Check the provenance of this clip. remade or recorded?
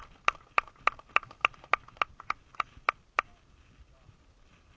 recorded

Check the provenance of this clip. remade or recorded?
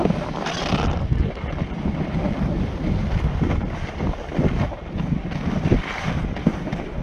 recorded